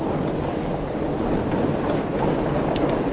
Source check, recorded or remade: recorded